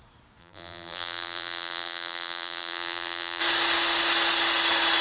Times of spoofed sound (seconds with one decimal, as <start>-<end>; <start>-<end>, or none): 0.4-3.4